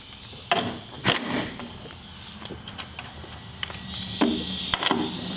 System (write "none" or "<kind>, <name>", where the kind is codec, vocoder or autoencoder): none